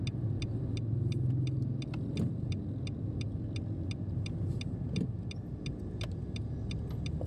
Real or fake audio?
real